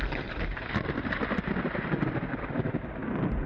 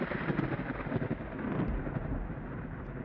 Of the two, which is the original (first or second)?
second